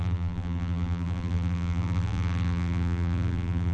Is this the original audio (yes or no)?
no